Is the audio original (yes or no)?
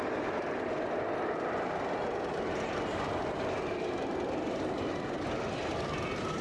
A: yes